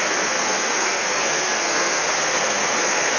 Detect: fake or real fake